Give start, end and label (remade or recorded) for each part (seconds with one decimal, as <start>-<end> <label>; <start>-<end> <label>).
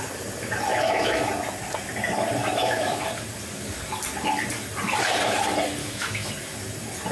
0.0-0.7 recorded; 0.7-1.3 remade; 1.3-2.4 recorded; 2.4-3.1 remade; 3.1-5.8 recorded; 5.8-6.3 remade; 6.3-7.1 recorded